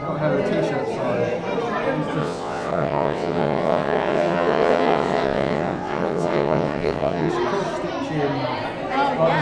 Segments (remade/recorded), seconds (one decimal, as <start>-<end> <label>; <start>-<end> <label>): 0.0-2.2 recorded; 2.2-7.3 remade; 7.3-9.4 recorded